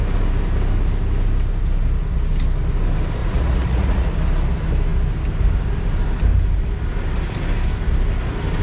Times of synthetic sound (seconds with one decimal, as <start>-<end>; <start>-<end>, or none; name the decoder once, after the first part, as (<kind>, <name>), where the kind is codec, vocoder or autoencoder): 3.2-4.1 (vocoder, Vocos)